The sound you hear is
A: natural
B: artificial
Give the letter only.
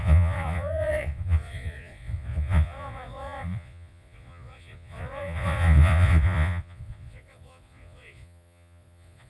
B